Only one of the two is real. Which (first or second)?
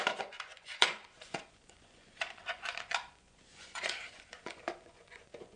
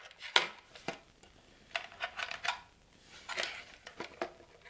second